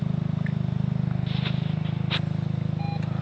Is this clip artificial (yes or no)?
no